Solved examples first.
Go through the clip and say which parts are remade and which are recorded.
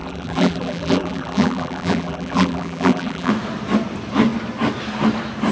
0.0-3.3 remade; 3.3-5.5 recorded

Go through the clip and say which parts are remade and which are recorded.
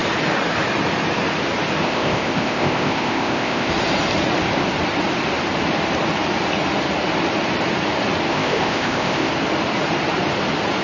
0.0-1.8 recorded; 1.8-3.7 remade; 3.7-8.3 recorded; 8.3-9.3 remade; 9.3-10.8 recorded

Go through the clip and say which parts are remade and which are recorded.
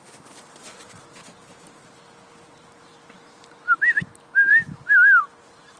0.0-5.8 recorded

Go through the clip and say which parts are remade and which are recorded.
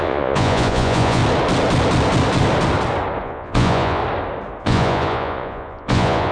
0.0-1.2 remade; 1.2-3.2 recorded; 3.2-4.0 remade; 4.0-4.6 recorded; 4.6-6.3 remade